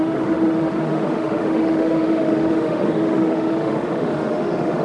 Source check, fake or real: fake